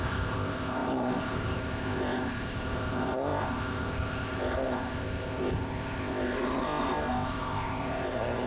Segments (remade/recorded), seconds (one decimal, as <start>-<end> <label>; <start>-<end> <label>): 0.0-8.5 remade